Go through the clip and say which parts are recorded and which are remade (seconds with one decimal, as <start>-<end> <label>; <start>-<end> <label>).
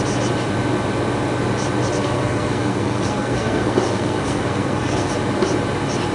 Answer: 0.0-2.0 recorded; 2.0-5.1 remade; 5.1-6.1 recorded